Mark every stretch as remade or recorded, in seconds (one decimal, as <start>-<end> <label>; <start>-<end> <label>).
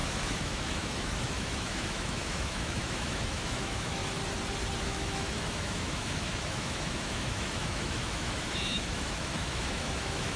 0.0-4.0 remade; 4.0-4.8 recorded; 4.8-10.4 remade